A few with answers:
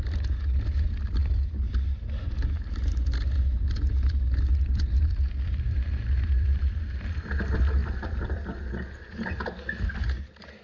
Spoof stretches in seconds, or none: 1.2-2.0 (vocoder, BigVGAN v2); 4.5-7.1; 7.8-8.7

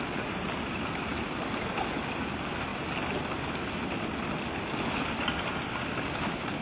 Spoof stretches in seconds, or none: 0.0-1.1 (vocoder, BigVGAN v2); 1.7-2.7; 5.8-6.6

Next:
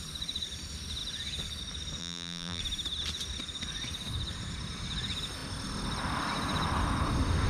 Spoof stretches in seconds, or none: 2.0-2.6 (vocoder, BigVGAN v2)

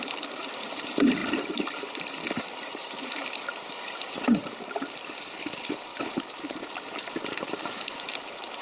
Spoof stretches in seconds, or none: 1.2-4.7 (vocoder, BigVGAN v2); 5.9-6.6; 7.0-8.1

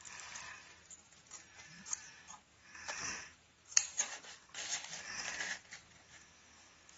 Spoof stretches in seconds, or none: 2.3-3.1 (vocoder, BigVGAN v2); 3.9-4.5; 5.7-6.2

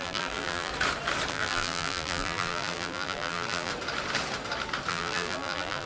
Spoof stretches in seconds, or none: 0.0-0.7 (vocoder, BigVGAN v2); 1.3-3.7; 4.9-5.9

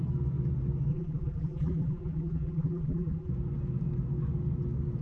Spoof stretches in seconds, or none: 0.9-3.3 (vocoder, BigVGAN v2)